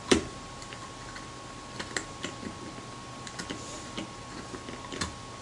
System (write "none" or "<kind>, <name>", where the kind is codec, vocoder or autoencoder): none